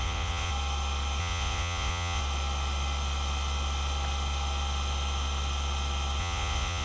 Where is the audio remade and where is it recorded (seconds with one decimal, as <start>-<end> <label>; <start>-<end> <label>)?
0.0-0.5 remade; 0.5-1.2 recorded; 1.2-2.2 remade; 2.2-6.2 recorded; 6.2-6.8 remade